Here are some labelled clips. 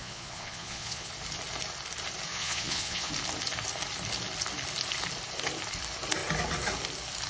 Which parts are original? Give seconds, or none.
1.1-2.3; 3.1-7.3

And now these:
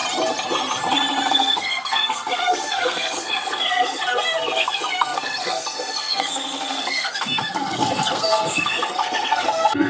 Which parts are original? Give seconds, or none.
0.0-1.3

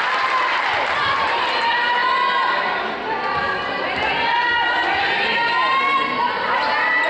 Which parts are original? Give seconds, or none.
0.0-7.1